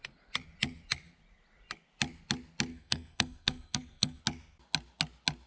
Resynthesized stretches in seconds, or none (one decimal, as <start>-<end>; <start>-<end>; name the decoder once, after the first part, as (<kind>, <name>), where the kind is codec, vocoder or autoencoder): 2.7-4.2 (codec, SNAC)